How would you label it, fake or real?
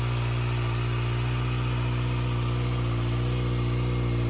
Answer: real